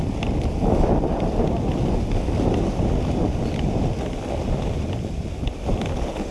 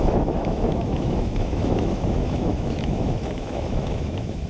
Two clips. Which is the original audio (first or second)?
first